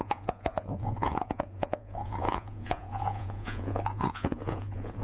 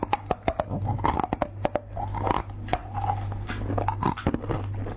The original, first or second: second